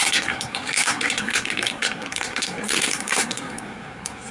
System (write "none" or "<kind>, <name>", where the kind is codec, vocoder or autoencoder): codec, SNAC